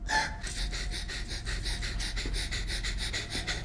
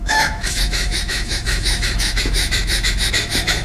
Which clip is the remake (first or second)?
second